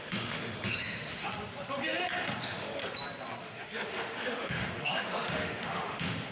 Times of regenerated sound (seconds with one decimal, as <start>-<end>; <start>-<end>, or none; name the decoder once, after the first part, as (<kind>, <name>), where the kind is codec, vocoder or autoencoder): 0.0-1.3 (autoencoder, DAC-VAE); 2.4-2.8; 3.4-6.3